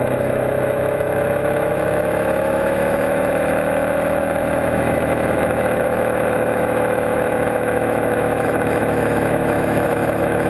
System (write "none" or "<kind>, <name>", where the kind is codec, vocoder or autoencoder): autoencoder, DAC-VAE